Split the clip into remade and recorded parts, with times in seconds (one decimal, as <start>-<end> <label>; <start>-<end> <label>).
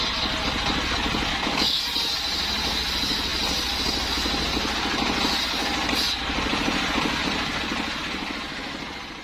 0.0-1.3 recorded; 1.3-1.8 remade; 1.8-9.2 recorded